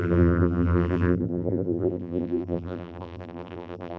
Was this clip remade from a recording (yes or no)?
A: yes